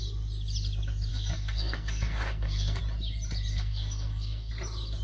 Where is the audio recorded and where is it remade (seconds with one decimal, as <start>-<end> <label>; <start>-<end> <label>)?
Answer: 0.0-1.1 recorded; 1.1-2.8 remade; 2.8-3.5 recorded; 3.5-4.5 remade; 4.5-5.0 recorded

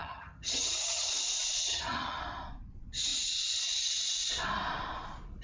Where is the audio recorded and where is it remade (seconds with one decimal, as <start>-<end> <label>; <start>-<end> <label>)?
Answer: 0.0-1.1 remade; 1.1-1.7 recorded; 1.7-2.2 remade; 2.2-5.4 recorded